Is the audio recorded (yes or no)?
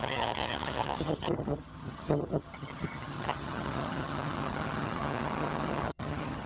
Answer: no